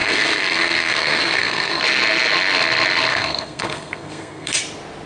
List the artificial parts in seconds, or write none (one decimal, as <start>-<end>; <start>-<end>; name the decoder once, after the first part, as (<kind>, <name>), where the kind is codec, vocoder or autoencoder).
0.0-1.8 (codec, SNAC); 3.1-4.6